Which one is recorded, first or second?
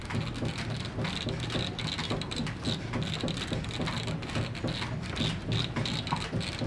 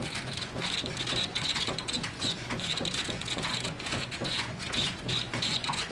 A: first